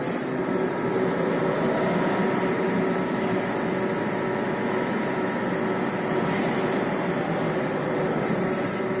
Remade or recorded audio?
recorded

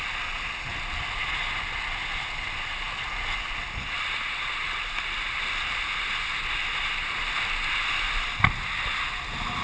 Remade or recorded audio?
recorded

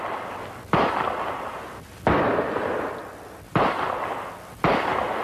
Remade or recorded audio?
recorded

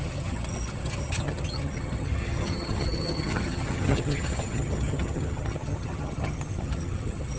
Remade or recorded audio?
remade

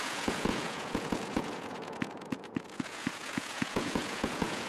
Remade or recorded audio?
remade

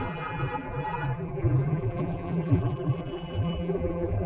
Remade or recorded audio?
remade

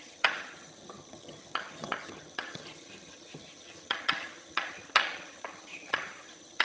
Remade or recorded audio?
remade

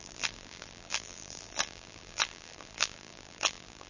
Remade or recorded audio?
remade